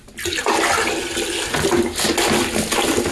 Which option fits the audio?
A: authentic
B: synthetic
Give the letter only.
A